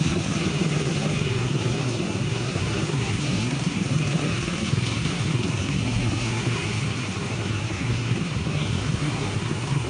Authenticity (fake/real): fake